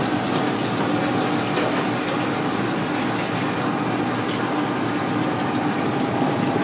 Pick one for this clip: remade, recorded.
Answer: recorded